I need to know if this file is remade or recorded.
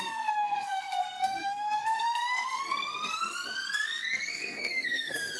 remade